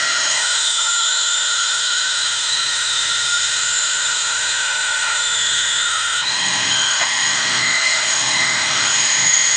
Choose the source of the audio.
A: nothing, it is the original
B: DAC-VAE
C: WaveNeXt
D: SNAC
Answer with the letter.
B